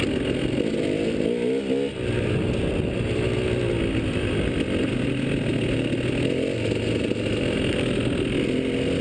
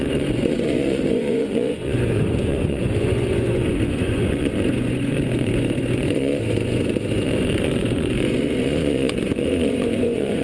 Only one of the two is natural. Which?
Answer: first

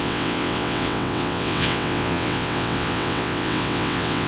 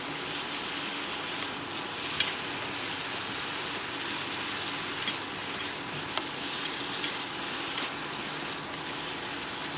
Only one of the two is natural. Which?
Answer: second